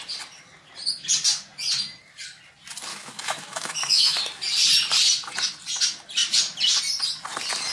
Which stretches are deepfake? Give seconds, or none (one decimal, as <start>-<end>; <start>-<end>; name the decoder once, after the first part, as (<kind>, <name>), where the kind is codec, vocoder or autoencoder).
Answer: 2.9-4.2 (autoencoder, DAC-VAE)